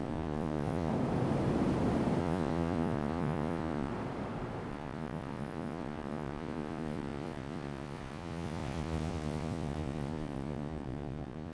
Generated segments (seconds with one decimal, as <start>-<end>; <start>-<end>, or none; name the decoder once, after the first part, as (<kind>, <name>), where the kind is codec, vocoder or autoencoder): 0.0-0.9 (vocoder, Vocos); 2.2-3.9; 4.7-11.5